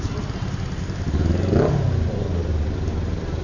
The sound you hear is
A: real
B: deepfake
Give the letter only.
A